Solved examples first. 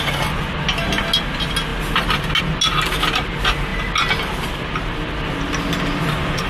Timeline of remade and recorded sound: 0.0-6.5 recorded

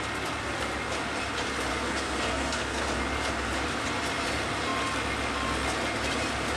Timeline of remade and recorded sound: 0.0-1.7 recorded; 1.7-2.8 remade; 2.8-6.6 recorded